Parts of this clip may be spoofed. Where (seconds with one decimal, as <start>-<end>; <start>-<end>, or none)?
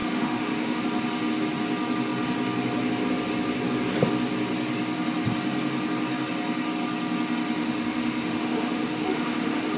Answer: 0.0-0.8; 7.6-9.8